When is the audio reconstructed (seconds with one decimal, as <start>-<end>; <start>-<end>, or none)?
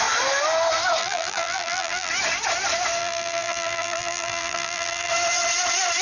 1.0-2.1; 3.0-5.1